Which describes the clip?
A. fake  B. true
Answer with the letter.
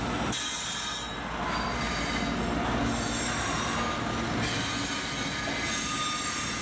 B